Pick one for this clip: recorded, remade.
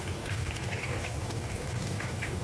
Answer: remade